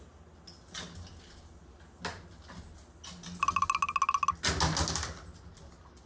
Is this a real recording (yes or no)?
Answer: yes